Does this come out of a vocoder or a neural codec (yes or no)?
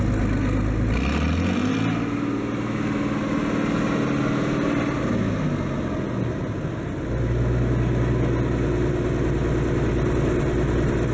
no